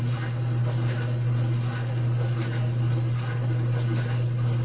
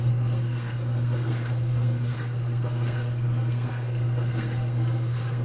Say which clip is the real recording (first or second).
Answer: first